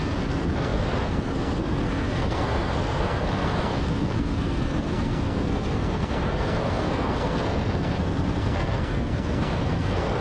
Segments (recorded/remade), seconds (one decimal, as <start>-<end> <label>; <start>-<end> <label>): 0.0-10.2 remade